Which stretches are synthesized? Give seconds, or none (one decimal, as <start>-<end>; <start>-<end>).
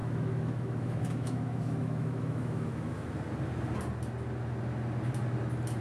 0.0-3.1